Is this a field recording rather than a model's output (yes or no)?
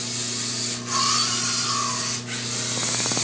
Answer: yes